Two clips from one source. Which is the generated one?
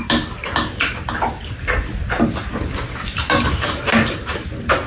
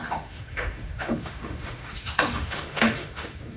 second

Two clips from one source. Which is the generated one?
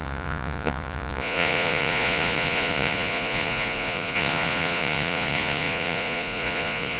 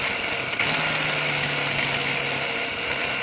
first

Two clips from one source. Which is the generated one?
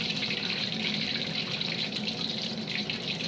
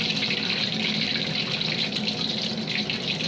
first